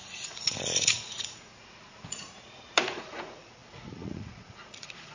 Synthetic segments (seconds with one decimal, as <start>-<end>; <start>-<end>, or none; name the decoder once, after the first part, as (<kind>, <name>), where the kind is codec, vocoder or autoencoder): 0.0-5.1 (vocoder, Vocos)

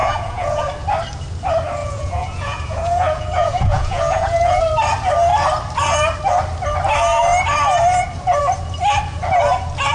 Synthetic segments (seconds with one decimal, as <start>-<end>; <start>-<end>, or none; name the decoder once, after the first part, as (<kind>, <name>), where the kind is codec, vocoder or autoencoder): 0.0-0.7 (vocoder, Vocos); 1.8-4.6

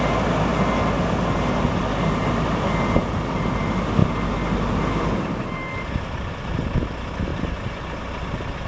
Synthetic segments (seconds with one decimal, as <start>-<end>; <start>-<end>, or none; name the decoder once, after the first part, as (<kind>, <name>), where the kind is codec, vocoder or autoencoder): none